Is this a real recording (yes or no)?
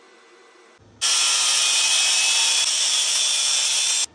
yes